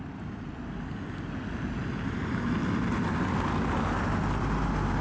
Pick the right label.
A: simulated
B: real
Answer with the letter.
B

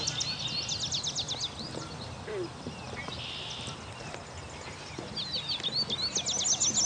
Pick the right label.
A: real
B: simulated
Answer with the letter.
A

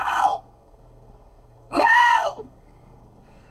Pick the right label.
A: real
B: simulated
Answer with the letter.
B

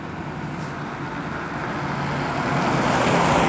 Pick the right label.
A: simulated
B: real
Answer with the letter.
B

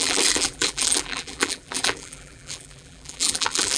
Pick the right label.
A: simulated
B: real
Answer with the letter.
A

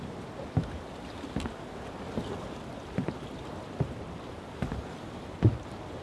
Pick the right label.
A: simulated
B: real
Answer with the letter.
B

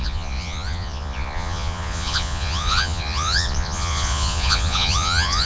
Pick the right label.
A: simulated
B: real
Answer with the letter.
A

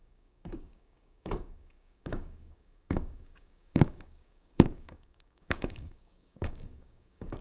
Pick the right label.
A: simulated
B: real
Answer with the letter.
A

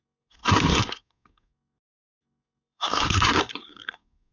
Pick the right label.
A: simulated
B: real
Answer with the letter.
A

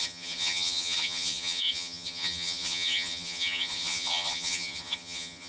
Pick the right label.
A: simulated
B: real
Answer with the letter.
A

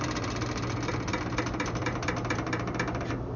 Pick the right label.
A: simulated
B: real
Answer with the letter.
A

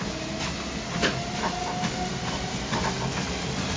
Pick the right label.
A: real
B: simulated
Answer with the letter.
A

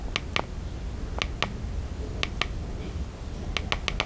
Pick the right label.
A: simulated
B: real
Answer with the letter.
B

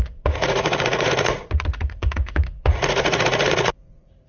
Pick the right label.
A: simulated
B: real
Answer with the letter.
A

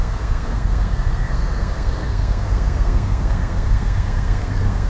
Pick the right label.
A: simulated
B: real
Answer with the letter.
A